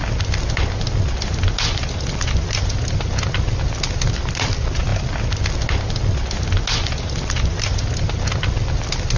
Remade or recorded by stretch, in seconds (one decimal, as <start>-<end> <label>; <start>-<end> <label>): 0.0-9.2 recorded

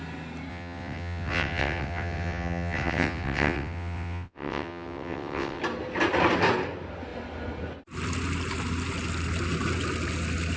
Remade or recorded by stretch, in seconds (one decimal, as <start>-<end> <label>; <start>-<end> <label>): 0.0-0.5 recorded; 0.5-5.6 remade; 5.6-10.6 recorded

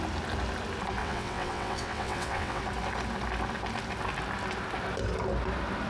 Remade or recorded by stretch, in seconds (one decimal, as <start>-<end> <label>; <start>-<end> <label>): 0.0-1.0 recorded; 1.0-2.6 remade; 2.6-5.9 recorded

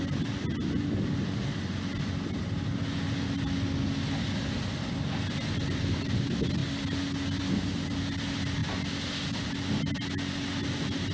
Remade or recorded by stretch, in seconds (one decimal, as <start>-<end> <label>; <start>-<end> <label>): 0.0-11.1 recorded